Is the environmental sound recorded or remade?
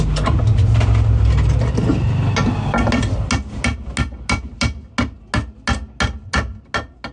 recorded